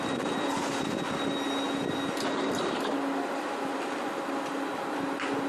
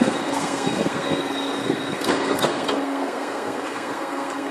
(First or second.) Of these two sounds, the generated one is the second